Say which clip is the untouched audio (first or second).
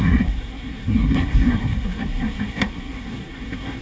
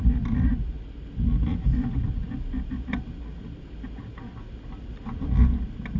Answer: second